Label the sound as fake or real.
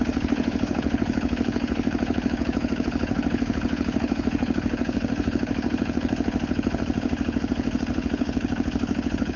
fake